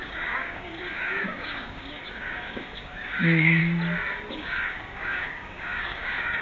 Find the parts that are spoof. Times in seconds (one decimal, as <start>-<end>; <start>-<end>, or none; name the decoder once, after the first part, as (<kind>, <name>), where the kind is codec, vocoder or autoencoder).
0.0-3.6 (codec, DAC); 4.3-6.4